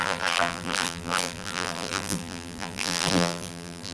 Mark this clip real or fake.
fake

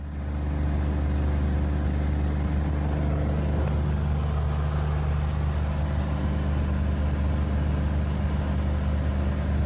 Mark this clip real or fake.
real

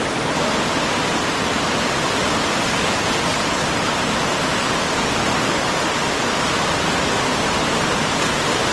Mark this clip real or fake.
real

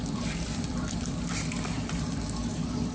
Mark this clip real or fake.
fake